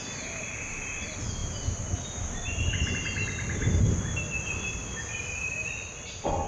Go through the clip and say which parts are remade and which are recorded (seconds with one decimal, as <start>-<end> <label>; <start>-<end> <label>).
0.0-4.8 recorded; 4.8-6.5 remade